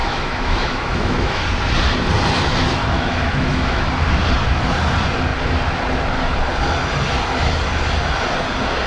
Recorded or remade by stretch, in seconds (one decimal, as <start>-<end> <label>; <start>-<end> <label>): 0.0-1.4 remade; 1.4-2.8 recorded; 2.8-3.9 remade; 3.9-8.9 recorded